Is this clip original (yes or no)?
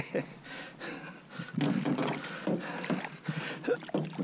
yes